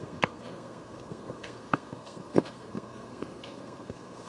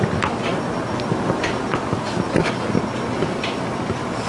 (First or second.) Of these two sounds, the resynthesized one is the first